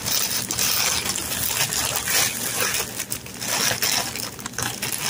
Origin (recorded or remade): recorded